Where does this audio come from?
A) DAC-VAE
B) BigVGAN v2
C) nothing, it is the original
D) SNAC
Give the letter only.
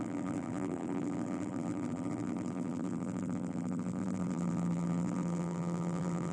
B